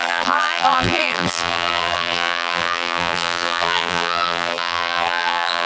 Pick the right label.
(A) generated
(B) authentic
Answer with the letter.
A